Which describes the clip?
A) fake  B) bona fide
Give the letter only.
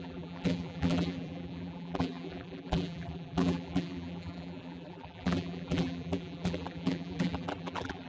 A